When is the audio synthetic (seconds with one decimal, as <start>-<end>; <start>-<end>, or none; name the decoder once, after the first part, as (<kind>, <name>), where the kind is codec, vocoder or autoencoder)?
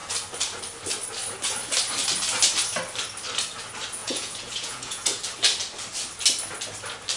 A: 4.0-5.2 (vocoder, Vocos)